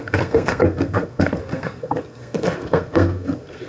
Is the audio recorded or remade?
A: remade